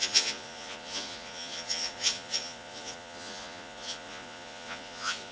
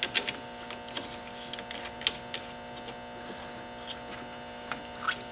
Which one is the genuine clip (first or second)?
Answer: second